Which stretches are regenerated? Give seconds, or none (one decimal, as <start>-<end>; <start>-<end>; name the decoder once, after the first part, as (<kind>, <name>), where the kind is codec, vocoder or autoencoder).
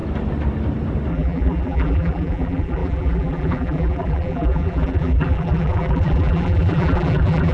1.1-7.5 (vocoder, BigVGAN v2)